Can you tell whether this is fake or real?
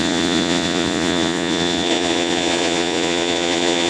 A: fake